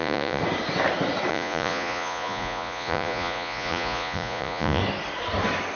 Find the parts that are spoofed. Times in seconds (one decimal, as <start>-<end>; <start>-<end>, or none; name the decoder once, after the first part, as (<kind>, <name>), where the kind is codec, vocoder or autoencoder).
0.0-0.4 (vocoder, Vocos); 1.3-4.8